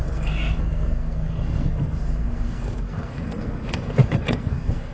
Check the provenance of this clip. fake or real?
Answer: fake